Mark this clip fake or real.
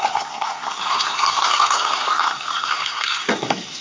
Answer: fake